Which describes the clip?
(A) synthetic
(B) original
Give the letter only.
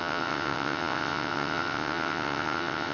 A